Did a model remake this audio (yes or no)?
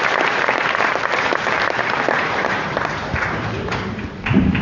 yes